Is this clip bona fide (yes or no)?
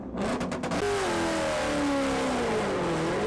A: yes